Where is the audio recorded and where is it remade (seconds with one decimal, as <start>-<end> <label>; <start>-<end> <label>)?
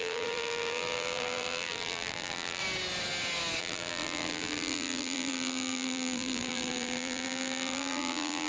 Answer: 0.0-2.6 remade; 2.6-3.6 recorded; 3.6-8.5 remade